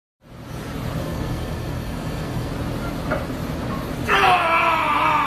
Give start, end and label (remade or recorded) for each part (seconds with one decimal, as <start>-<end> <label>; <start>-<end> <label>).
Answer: 0.0-1.0 recorded; 1.0-2.5 remade; 2.5-5.3 recorded